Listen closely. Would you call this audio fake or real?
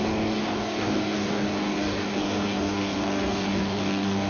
fake